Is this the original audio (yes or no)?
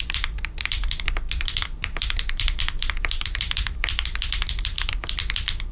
no